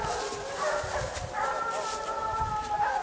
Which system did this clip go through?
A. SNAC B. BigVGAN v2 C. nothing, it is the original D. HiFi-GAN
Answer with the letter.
C